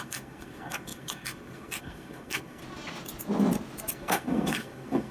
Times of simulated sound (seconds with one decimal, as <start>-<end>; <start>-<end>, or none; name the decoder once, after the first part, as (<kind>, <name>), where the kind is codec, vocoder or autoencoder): 0.0-2.6 (codec, SNAC); 3.9-5.1